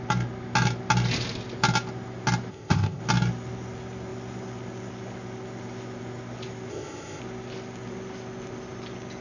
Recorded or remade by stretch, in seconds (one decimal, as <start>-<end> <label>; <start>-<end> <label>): 0.0-2.5 recorded; 2.5-3.0 remade; 3.0-6.7 recorded; 6.7-7.2 remade; 7.2-9.2 recorded